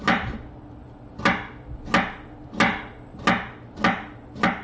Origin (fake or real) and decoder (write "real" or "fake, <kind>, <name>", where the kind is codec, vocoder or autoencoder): real